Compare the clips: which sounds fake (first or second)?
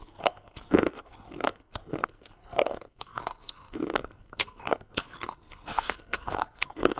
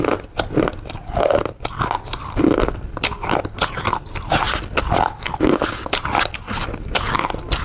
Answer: first